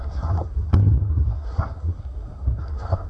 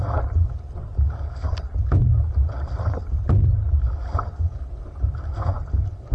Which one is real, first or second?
second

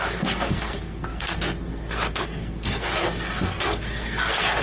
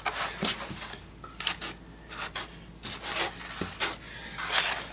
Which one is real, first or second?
second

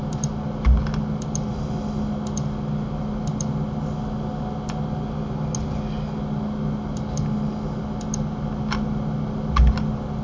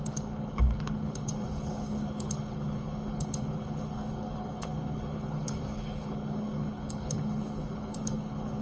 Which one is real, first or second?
first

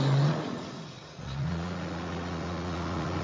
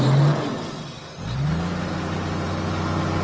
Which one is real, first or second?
second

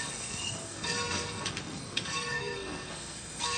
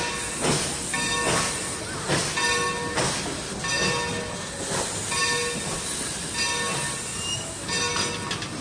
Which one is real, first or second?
second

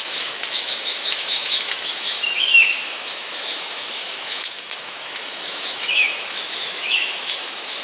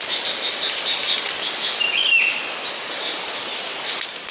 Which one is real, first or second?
second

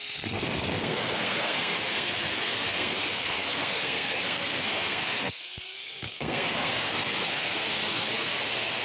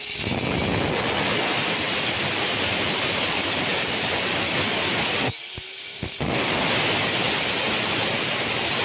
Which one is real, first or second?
second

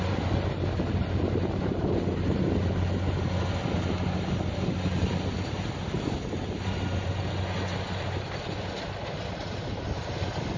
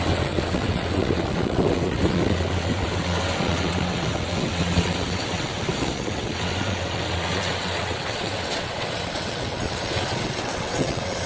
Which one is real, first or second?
first